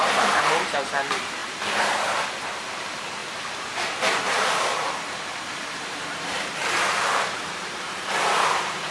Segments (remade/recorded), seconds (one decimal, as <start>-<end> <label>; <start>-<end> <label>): 0.0-8.9 remade